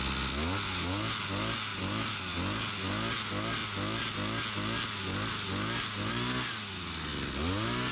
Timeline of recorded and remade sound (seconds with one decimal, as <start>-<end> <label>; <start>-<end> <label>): 0.0-7.9 recorded